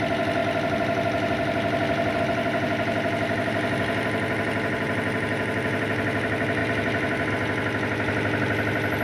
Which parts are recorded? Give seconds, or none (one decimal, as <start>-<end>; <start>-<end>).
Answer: 0.0-9.0